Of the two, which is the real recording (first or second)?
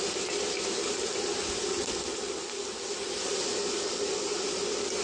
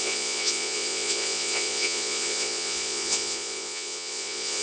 first